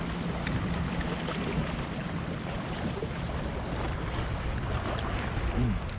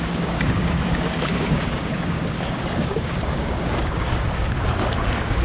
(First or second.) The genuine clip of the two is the first